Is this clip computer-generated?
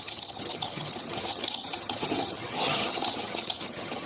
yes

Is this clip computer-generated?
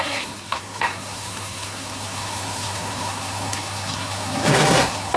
yes